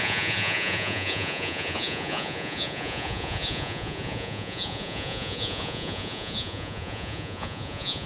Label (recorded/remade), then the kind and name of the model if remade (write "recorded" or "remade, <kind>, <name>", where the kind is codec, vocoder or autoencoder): remade, vocoder, Vocos